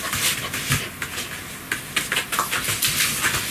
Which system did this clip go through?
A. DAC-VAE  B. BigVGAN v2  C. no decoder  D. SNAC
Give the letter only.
C